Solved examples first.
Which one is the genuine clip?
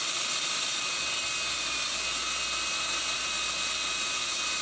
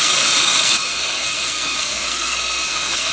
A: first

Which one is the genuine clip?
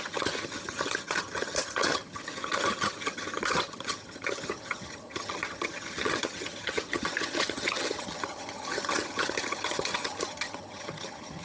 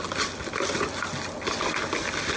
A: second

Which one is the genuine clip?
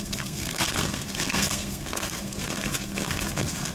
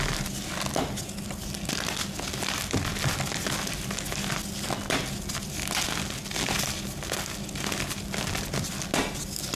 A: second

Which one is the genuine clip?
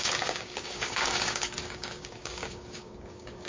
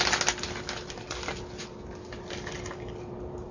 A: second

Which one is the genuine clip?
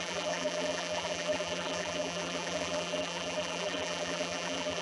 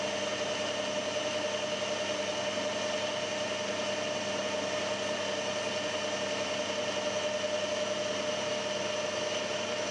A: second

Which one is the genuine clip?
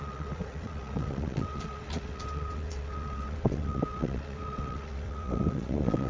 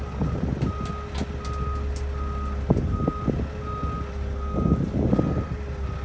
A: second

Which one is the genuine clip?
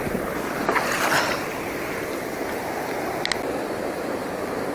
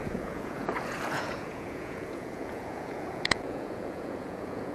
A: first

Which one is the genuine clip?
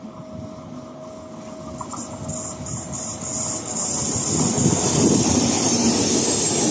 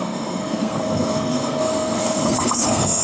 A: first